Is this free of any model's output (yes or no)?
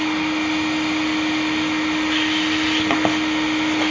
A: yes